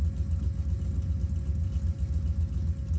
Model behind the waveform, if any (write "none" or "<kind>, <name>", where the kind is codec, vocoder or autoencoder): none